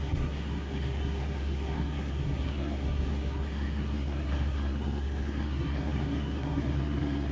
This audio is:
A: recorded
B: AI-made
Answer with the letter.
B